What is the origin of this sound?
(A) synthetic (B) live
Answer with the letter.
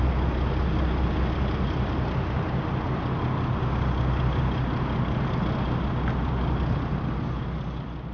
B